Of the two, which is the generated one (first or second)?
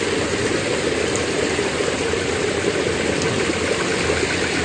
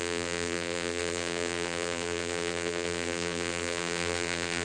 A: second